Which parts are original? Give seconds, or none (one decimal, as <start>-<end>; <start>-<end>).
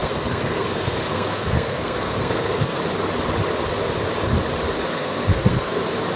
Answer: 2.8-4.9; 5.8-6.2